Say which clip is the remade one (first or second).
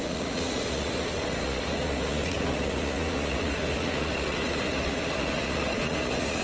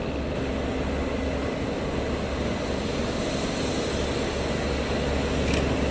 first